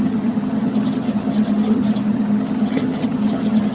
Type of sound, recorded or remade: remade